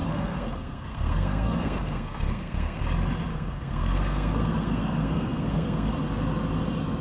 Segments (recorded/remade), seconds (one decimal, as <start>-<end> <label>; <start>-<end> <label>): 0.0-2.8 remade; 2.8-3.3 recorded; 3.3-5.9 remade; 5.9-7.0 recorded